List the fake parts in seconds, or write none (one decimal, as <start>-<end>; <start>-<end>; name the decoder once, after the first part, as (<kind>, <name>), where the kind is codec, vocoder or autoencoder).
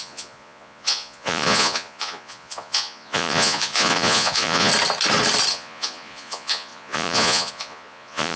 0.0-4.7 (vocoder, Vocos); 5.5-8.4